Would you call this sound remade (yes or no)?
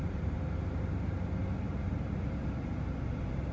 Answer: no